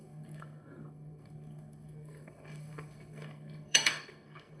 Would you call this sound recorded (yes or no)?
no